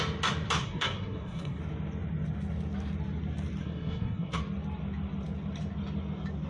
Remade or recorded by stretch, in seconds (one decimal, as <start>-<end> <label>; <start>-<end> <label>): 0.0-0.6 recorded; 0.6-1.6 remade; 1.6-3.6 recorded; 3.6-4.4 remade; 4.4-6.5 recorded

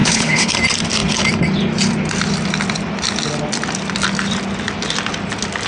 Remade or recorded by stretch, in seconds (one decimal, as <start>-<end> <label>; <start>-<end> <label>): 0.0-0.5 remade; 0.5-5.7 recorded

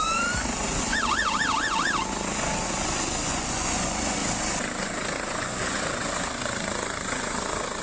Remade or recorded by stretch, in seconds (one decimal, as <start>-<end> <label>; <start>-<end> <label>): 0.0-4.2 remade; 4.2-4.8 recorded; 4.8-7.8 remade